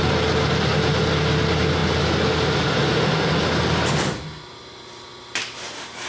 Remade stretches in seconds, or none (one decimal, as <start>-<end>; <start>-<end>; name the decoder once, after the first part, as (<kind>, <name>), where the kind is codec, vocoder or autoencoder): none